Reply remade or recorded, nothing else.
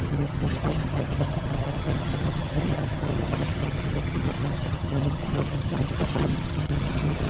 remade